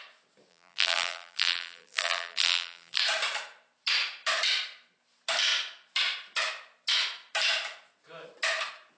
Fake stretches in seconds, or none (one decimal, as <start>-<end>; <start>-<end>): 0.5-3.0